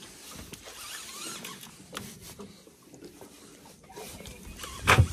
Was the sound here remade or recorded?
recorded